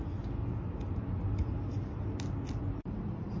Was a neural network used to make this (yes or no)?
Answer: no